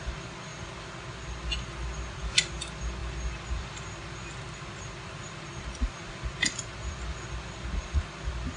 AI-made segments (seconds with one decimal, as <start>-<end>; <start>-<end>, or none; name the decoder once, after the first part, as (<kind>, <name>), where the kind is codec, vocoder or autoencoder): none